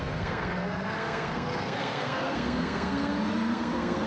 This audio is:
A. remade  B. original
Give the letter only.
A